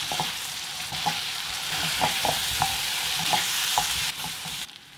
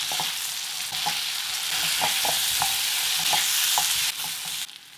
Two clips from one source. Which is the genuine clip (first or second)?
second